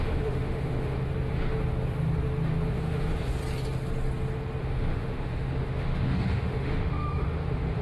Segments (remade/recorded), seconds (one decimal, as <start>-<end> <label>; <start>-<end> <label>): 0.0-1.1 remade; 1.1-2.7 recorded; 2.7-3.4 remade; 3.4-4.6 recorded; 4.6-7.8 remade

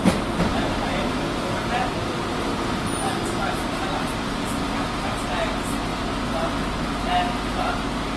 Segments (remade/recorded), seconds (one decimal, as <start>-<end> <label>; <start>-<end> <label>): 0.0-8.2 recorded